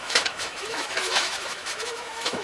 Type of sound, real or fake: fake